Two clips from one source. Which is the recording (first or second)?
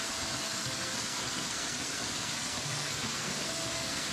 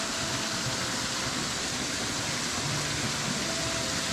second